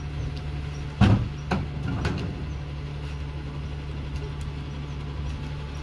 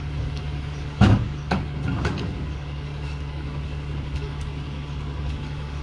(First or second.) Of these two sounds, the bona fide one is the first